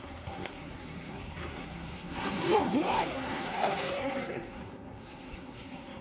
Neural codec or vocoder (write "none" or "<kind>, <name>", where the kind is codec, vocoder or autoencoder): codec, SNAC